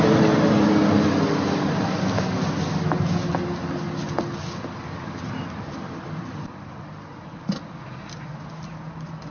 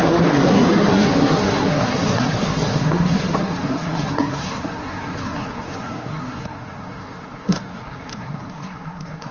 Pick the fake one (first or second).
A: second